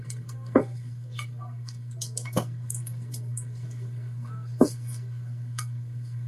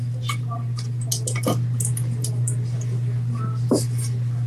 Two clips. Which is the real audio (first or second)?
second